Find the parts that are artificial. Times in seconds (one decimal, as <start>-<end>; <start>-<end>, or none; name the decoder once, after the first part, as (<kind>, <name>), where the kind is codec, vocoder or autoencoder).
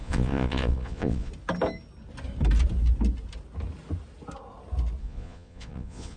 0.0-1.3 (vocoder, Vocos); 5.0-6.2